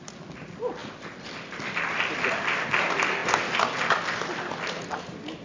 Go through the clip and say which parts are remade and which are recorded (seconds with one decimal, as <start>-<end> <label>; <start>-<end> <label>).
0.0-0.8 recorded; 0.8-2.4 remade; 2.4-5.4 recorded